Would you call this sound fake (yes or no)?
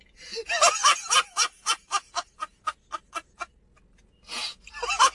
no